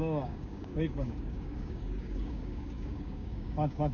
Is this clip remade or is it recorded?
remade